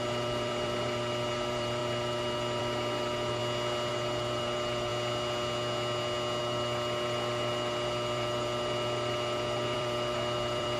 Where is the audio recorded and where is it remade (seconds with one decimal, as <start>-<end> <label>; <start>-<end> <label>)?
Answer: 0.0-3.4 remade; 3.4-3.9 recorded; 3.9-4.9 remade; 4.9-6.4 recorded; 6.4-10.8 remade